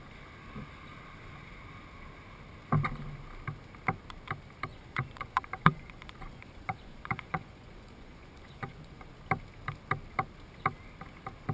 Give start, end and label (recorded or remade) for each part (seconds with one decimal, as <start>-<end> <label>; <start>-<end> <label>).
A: 0.0-4.7 recorded; 4.7-9.1 remade; 9.1-11.5 recorded